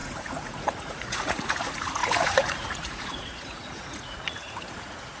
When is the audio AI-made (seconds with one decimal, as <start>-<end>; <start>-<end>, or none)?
0.0-5.2